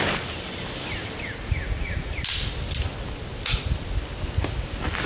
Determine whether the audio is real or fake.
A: real